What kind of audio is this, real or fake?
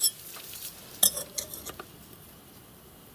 real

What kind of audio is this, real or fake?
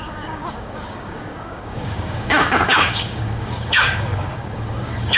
fake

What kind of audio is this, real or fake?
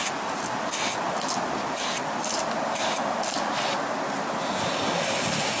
real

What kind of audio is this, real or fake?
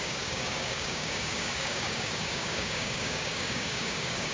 fake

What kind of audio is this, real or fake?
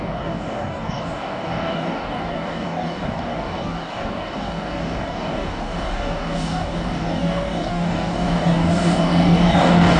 fake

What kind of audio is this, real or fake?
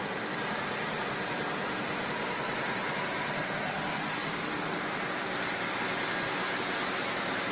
real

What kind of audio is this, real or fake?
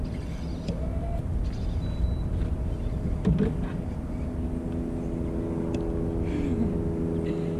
real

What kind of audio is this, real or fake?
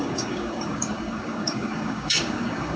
fake